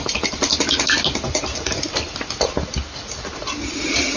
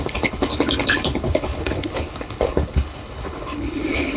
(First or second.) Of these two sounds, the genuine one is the first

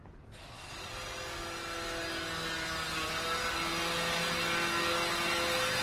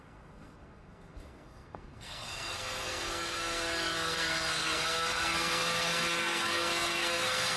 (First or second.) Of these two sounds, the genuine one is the first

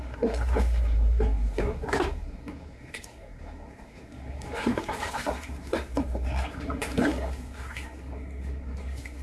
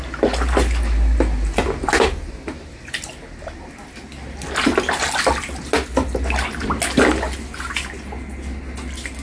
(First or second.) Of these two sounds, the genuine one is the second